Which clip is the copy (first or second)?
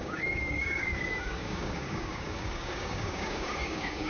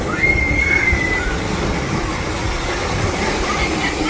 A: first